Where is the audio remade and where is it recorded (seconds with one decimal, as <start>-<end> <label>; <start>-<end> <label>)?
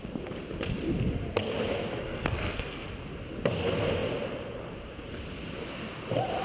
0.0-2.0 recorded; 2.0-2.9 remade; 2.9-6.4 recorded